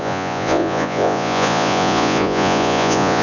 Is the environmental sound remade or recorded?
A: remade